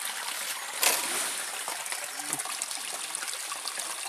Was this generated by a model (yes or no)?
no